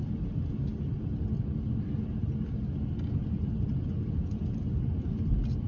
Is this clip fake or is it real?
real